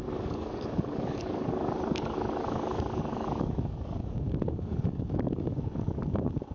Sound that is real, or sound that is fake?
fake